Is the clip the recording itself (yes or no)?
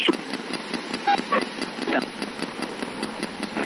yes